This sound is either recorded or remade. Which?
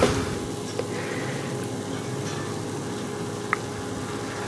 recorded